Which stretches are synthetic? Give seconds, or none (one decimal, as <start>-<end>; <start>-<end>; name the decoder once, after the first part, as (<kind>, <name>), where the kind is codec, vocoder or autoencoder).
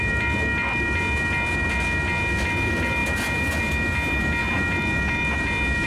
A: none